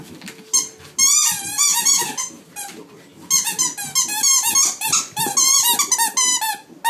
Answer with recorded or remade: recorded